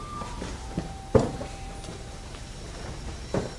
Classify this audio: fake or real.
fake